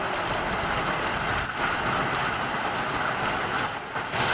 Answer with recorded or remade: recorded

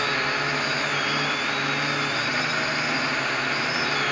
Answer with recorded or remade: recorded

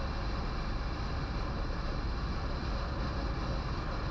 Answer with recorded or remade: recorded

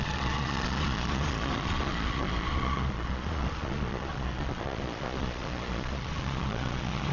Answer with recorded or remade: remade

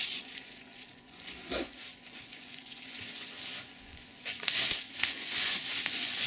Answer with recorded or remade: remade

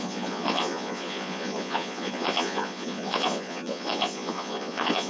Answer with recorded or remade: remade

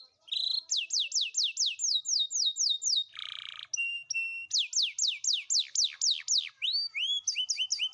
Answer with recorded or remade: recorded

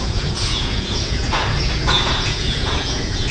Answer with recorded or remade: remade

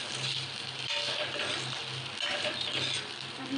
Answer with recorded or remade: recorded